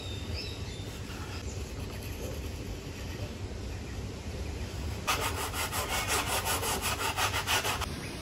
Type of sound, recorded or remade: recorded